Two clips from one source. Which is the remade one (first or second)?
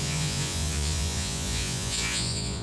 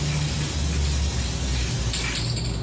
first